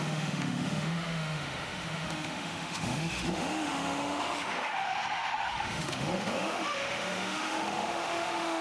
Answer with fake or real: fake